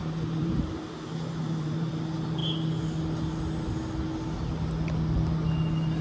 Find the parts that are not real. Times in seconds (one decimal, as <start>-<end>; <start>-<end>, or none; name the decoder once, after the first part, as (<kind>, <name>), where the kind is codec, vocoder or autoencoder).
0.0-1.9 (vocoder, BigVGAN v2)